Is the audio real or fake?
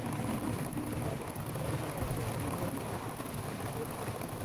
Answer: fake